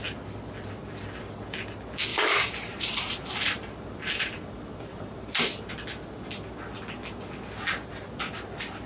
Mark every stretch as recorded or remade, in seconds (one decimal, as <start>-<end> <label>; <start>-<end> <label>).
0.0-2.1 recorded; 2.1-5.7 remade; 5.7-8.9 recorded